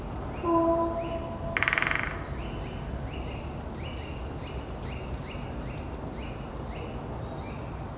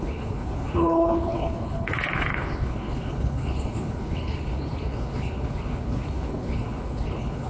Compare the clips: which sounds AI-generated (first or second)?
second